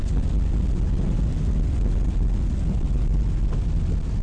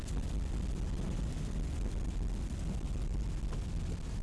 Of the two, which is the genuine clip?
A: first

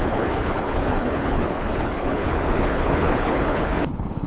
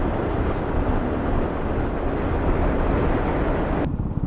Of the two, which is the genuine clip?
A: second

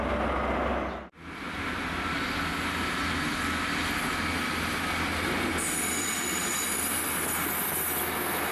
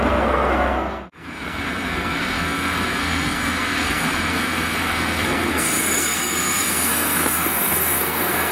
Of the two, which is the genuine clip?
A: first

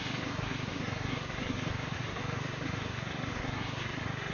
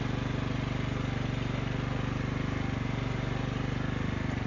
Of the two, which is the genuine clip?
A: second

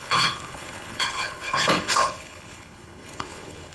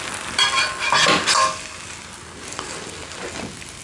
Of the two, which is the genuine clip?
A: second